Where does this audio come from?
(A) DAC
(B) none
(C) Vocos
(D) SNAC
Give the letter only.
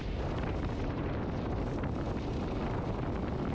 B